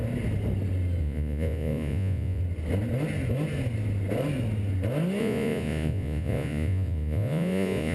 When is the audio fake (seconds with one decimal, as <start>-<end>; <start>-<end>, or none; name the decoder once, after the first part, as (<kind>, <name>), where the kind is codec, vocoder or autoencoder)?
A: 1.0-2.4 (vocoder, Vocos); 5.2-7.9